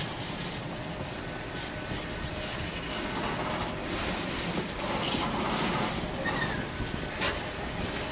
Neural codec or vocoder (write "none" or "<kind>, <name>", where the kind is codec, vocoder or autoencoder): none